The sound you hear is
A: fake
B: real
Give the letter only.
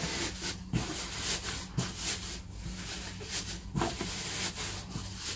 B